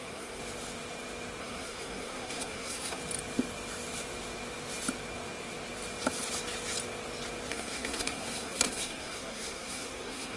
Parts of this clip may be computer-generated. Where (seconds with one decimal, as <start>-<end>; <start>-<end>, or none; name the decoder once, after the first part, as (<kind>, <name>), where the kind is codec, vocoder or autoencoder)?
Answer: 0.0-0.4 (codec, SNAC); 1.4-3.0; 7.5-10.4